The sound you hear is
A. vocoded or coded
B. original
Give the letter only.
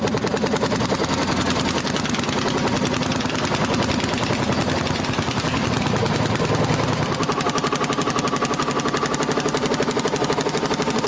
B